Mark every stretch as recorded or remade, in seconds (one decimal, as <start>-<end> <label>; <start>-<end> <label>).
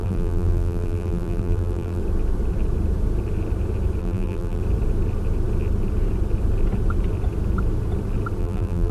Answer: 0.0-2.0 remade; 2.0-4.0 recorded; 4.0-4.6 remade; 4.6-8.4 recorded; 8.4-8.9 remade